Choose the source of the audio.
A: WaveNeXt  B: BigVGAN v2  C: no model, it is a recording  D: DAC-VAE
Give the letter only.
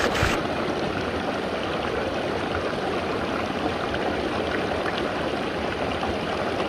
C